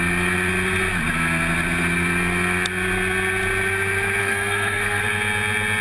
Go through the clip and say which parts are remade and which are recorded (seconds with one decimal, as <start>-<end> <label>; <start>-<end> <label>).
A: 0.0-4.2 recorded; 4.2-5.0 remade; 5.0-5.8 recorded